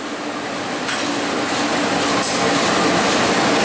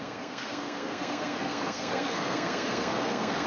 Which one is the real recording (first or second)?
first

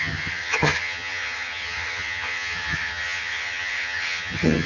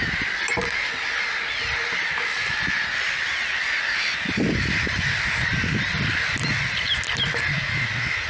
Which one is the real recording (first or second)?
second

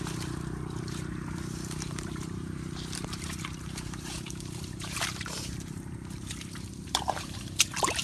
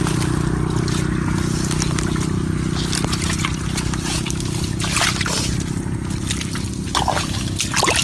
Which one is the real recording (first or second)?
second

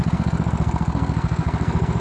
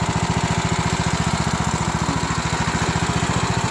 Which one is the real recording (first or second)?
second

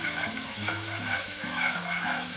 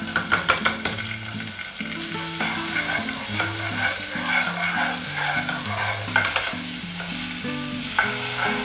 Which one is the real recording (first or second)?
second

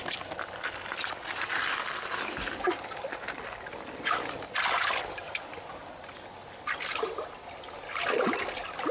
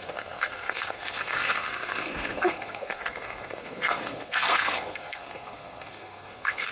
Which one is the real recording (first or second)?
first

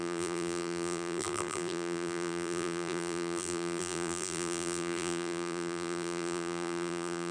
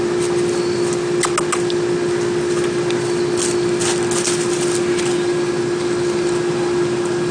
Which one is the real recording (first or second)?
second